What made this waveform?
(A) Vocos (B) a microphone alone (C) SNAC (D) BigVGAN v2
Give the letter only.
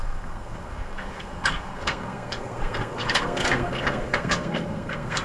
C